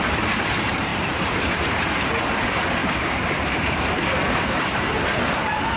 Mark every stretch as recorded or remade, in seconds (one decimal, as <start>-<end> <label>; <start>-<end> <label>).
0.0-0.9 recorded; 0.9-2.2 remade; 2.2-2.8 recorded; 2.8-4.9 remade; 4.9-5.8 recorded